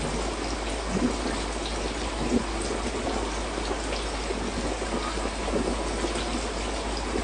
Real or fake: real